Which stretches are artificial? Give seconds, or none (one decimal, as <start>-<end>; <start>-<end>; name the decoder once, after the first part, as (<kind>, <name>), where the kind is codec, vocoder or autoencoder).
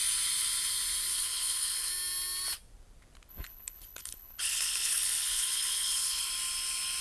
1.1-1.9 (codec, HILCodec); 3.3-6.3